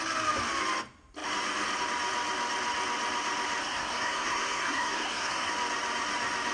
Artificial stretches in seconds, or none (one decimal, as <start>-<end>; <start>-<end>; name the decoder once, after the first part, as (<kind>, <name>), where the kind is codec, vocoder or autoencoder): 3.6-5.5 (codec, SNAC)